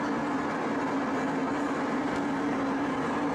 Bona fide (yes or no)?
yes